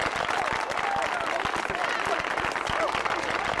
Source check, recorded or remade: recorded